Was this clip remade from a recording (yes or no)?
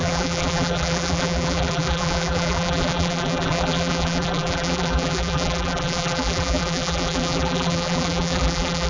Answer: yes